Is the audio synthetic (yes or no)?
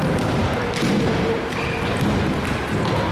no